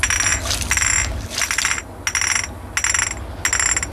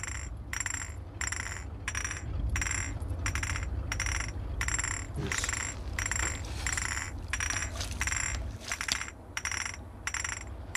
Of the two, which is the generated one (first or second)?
second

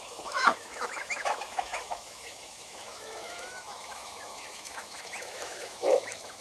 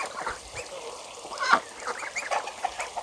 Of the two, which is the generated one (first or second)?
first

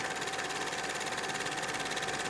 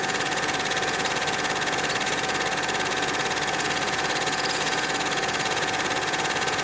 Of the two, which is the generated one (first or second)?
second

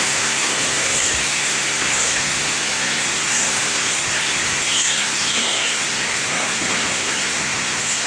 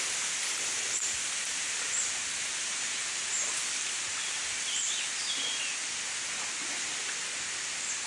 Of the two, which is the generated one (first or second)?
first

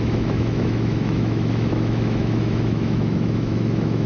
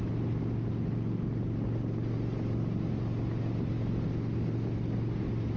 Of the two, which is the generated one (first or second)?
first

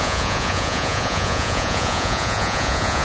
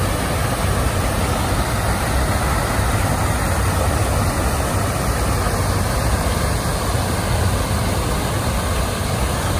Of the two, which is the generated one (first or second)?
first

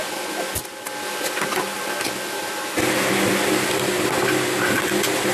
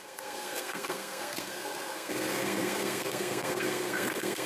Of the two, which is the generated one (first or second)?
second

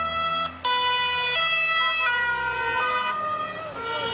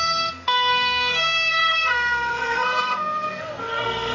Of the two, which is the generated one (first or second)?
second